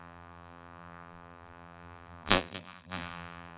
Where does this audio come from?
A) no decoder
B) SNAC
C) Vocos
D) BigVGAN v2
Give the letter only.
D